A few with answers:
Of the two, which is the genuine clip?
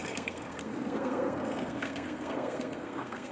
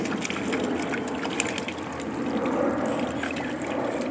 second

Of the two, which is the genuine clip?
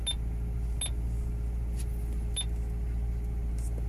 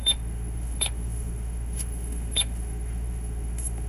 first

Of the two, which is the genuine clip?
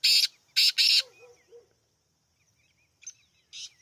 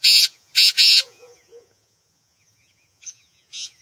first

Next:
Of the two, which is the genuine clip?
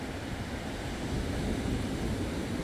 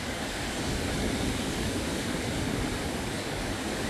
first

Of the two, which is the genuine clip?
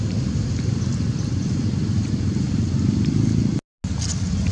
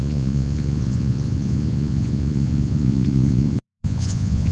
first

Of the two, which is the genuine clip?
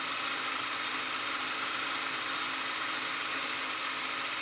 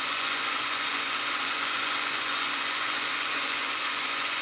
first